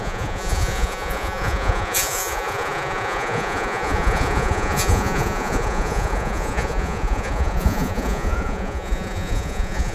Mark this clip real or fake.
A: fake